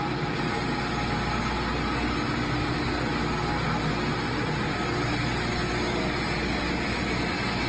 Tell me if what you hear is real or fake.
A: real